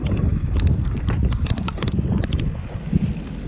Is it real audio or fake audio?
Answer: real